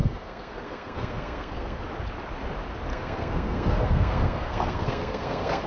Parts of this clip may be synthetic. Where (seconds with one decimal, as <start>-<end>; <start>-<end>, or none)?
0.0-1.8; 2.9-5.7